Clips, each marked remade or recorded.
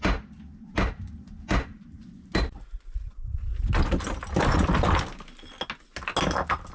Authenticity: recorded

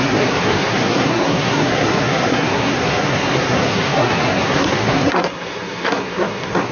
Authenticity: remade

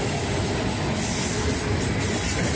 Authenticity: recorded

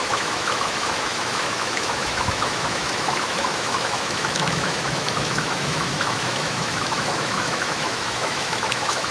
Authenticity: remade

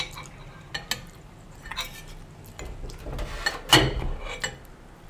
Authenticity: recorded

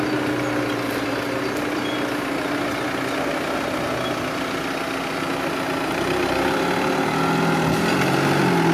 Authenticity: recorded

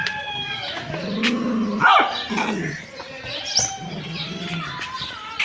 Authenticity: recorded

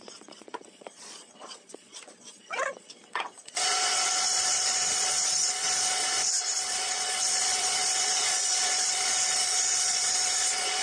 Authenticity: remade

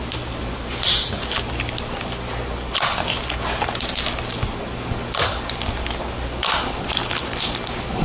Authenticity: recorded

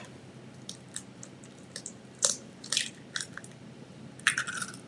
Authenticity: recorded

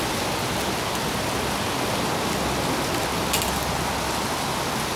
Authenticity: recorded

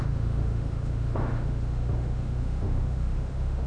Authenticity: remade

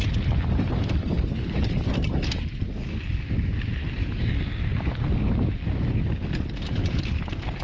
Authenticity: recorded